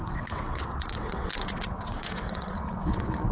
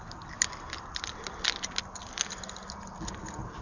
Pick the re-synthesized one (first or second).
first